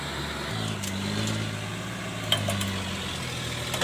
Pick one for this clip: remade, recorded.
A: recorded